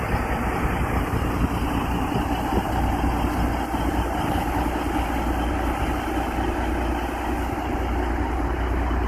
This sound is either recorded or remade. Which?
recorded